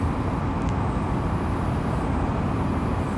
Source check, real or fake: real